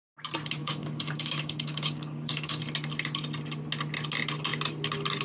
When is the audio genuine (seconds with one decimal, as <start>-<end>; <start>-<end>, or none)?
0.0-0.6; 2.6-5.2